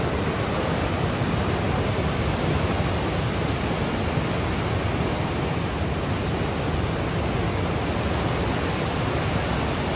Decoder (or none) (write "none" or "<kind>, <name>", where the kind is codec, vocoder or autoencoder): none